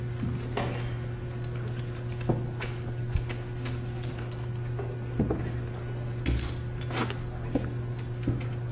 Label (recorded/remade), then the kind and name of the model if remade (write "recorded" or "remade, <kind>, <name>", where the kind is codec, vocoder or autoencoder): recorded